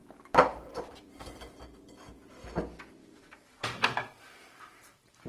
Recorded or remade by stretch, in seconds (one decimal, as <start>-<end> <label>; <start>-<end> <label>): 0.0-1.1 remade; 1.1-3.0 recorded; 3.0-5.3 remade